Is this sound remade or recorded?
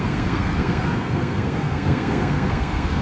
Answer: remade